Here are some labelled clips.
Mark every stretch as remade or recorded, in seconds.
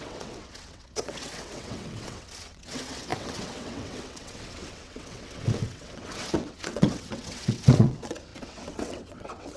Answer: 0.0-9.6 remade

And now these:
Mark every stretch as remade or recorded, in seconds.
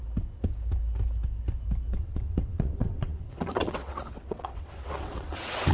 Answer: 0.0-1.9 recorded; 1.9-5.7 remade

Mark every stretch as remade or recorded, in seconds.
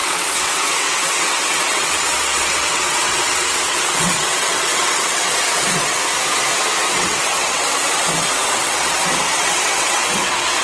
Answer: 0.0-6.0 remade; 6.0-6.9 recorded; 6.9-10.6 remade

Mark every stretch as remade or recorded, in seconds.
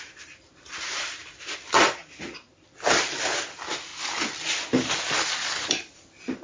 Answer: 0.0-6.4 recorded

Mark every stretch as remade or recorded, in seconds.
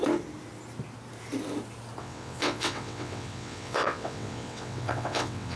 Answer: 0.0-2.0 recorded; 2.0-5.6 remade